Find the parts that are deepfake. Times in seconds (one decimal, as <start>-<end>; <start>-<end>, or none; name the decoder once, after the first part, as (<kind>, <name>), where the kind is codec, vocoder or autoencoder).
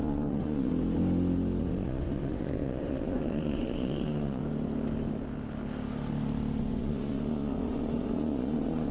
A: 0.0-0.7 (vocoder, Vocos); 1.6-4.4; 6.6-8.9